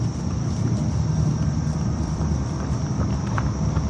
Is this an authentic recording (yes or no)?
yes